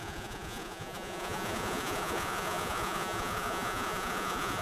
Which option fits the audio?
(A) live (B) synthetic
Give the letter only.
B